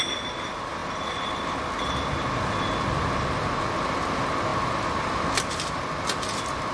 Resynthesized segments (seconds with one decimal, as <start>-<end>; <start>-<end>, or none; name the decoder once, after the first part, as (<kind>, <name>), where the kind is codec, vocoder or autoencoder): none